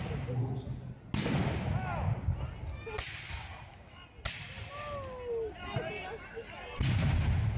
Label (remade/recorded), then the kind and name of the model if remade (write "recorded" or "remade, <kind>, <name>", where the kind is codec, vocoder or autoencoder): recorded